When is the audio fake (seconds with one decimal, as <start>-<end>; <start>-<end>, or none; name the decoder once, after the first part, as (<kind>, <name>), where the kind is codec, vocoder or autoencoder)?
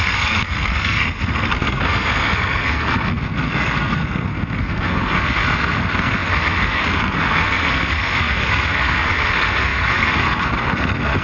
0.0-11.2 (codec, SNAC)